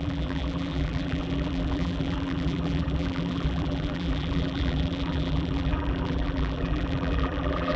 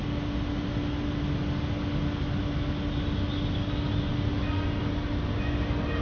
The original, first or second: second